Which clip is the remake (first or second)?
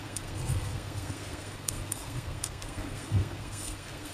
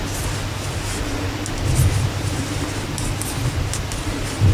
first